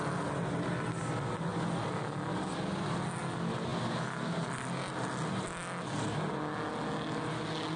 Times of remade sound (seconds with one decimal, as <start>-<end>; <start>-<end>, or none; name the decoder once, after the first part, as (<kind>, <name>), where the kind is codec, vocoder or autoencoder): none